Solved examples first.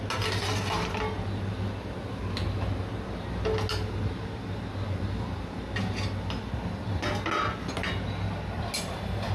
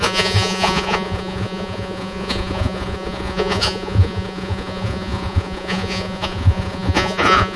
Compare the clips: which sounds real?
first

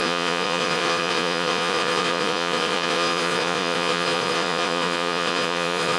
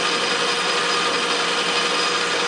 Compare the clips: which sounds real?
second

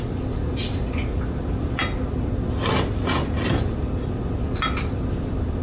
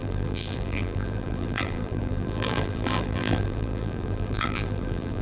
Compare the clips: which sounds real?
first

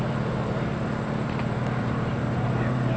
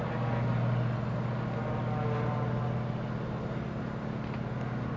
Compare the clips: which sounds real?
second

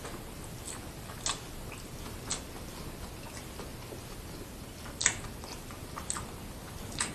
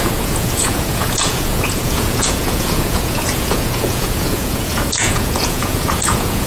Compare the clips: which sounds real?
first